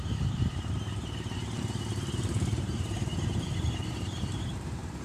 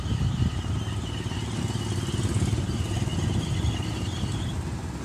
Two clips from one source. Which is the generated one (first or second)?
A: first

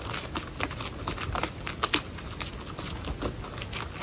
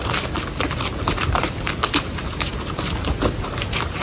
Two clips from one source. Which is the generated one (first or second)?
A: second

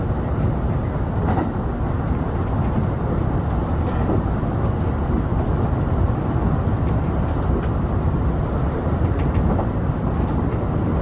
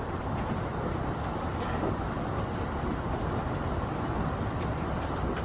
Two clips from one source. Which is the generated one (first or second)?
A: second